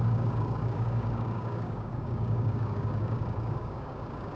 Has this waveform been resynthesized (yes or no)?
yes